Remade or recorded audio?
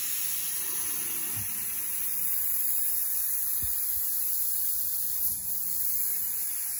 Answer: recorded